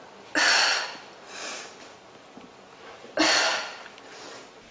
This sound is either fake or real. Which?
real